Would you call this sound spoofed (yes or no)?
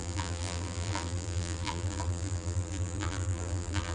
yes